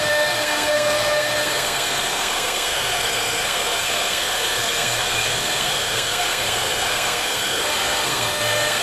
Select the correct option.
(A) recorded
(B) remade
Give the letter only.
B